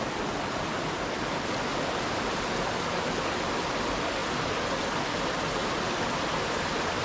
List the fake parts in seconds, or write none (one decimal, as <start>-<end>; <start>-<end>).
none